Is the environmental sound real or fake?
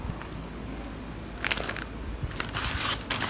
real